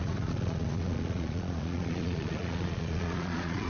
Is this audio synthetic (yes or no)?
yes